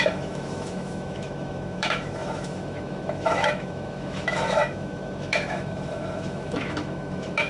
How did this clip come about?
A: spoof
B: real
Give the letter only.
A